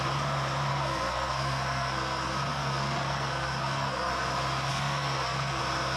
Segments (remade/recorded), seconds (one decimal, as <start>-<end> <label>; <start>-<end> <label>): 0.0-0.7 recorded; 0.7-4.1 remade; 4.1-4.7 recorded; 4.7-5.6 remade; 5.6-6.0 recorded

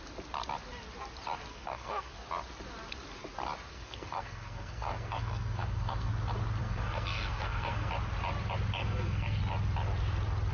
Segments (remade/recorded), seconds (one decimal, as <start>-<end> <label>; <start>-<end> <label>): 0.0-1.5 recorded; 1.5-2.1 remade; 2.1-3.7 recorded; 3.7-6.1 remade; 6.1-6.6 recorded; 6.6-7.9 remade; 7.9-8.8 recorded; 8.8-9.4 remade; 9.4-10.5 recorded

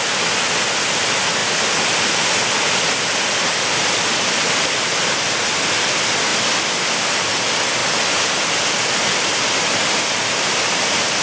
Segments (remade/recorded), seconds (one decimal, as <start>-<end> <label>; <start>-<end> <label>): 0.0-11.2 recorded

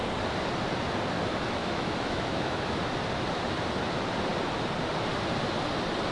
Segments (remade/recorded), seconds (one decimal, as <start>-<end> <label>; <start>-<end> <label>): 0.0-1.6 recorded; 1.6-2.8 remade; 2.8-6.1 recorded

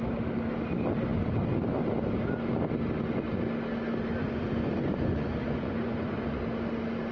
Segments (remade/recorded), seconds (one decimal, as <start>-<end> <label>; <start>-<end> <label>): 0.0-4.2 recorded; 4.2-6.4 remade; 6.4-7.1 recorded

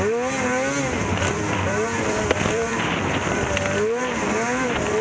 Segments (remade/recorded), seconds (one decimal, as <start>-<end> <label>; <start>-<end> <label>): 0.0-1.0 recorded; 1.0-3.4 remade; 3.4-5.0 recorded

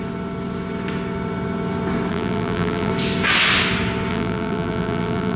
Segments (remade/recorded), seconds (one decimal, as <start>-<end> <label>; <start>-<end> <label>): 0.0-2.1 recorded; 2.1-2.9 remade; 2.9-4.1 recorded; 4.1-5.4 remade

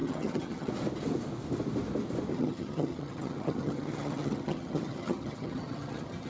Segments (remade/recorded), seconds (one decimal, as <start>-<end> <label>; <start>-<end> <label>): 0.0-0.7 remade; 0.7-2.3 recorded; 2.3-6.3 remade